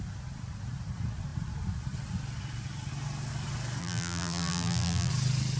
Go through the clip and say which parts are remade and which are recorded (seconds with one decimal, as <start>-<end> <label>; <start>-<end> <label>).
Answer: 0.0-3.8 recorded; 3.8-5.1 remade; 5.1-5.6 recorded